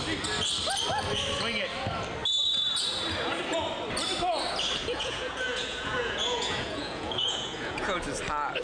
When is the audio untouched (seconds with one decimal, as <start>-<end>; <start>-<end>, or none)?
0.0-4.8; 8.0-8.6